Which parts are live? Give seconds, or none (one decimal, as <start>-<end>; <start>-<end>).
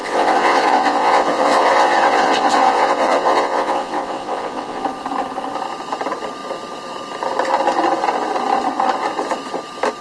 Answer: 4.8-10.0